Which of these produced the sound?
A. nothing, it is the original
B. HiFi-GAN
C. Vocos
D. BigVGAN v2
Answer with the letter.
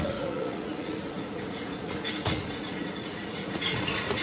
C